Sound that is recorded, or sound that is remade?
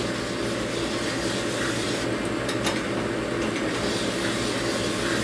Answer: recorded